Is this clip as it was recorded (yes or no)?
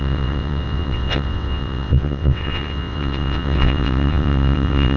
no